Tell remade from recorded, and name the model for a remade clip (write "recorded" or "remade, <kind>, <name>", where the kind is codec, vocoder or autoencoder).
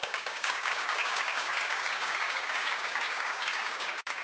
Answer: remade, codec, DAC